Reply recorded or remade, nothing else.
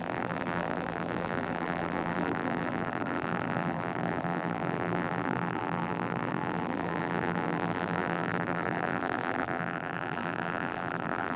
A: remade